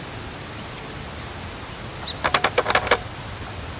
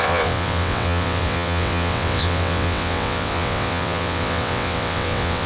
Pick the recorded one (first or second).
first